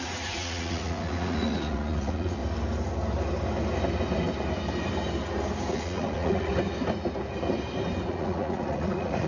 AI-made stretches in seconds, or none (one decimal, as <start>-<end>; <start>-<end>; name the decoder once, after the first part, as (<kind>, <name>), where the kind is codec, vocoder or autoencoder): 0.0-2.4 (vocoder, Vocos); 5.7-6.5; 8.1-9.3